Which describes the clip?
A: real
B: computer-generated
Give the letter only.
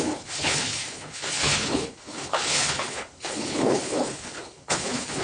B